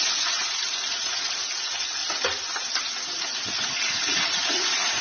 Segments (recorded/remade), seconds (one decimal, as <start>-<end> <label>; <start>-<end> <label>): 0.0-2.0 remade; 2.0-3.5 recorded; 3.5-5.0 remade